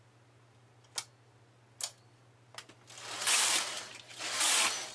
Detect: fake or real real